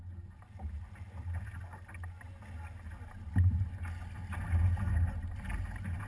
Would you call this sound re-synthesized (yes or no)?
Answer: no